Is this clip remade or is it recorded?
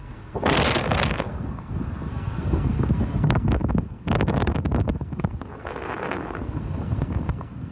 remade